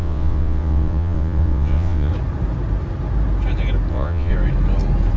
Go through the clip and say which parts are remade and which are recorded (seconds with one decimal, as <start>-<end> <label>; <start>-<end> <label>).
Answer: 0.0-2.1 remade; 2.1-3.9 recorded; 3.9-4.3 remade; 4.3-5.2 recorded